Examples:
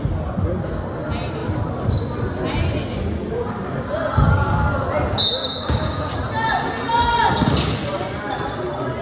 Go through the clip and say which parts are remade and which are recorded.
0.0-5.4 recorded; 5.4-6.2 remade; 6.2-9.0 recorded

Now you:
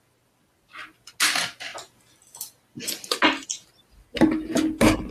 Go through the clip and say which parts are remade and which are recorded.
0.0-5.1 recorded

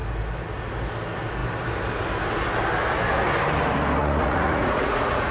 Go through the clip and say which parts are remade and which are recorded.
0.0-4.0 recorded; 4.0-5.3 remade